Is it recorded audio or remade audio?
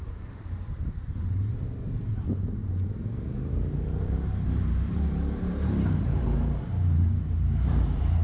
remade